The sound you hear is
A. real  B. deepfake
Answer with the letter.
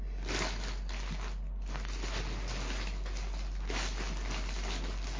A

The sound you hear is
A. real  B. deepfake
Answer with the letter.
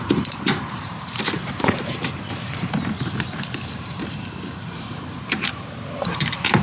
B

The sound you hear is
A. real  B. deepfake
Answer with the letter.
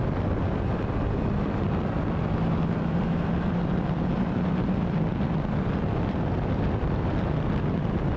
B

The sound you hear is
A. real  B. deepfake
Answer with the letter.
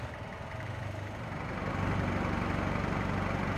A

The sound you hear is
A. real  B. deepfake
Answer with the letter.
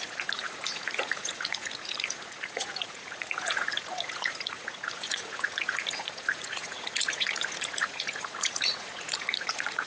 B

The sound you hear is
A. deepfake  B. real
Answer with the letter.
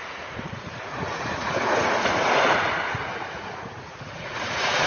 A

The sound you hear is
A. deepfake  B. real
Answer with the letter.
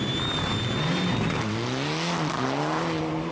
B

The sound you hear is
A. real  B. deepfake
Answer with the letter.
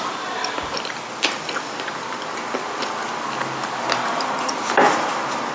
A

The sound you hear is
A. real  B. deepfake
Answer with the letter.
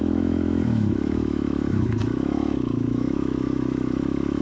B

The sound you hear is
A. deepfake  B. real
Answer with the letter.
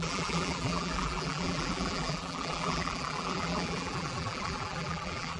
A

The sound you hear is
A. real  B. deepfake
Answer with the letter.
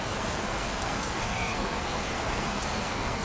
B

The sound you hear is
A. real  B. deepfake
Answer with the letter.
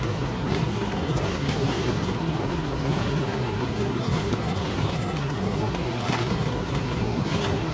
B